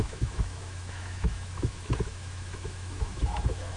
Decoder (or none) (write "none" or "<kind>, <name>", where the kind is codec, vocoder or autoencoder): autoencoder, DAC-VAE